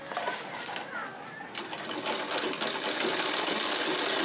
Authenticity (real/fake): real